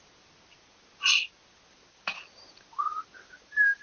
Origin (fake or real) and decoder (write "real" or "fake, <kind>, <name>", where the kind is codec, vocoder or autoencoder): real